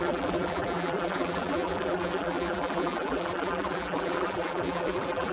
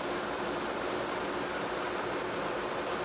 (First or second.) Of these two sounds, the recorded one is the second